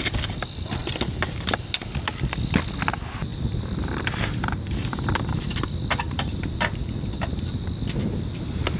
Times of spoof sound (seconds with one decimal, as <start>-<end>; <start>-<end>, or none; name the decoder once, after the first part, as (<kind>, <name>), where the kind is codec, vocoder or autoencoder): 3.3-8.2 (vocoder, BigVGAN v2)